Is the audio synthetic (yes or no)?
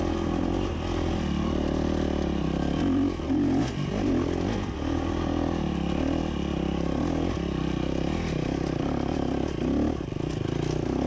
no